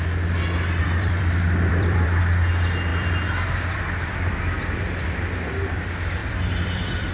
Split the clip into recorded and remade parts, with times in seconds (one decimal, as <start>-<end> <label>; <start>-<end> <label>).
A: 0.0-0.8 recorded; 0.8-2.2 remade; 2.2-2.9 recorded; 2.9-5.0 remade; 5.0-6.2 recorded; 6.2-7.1 remade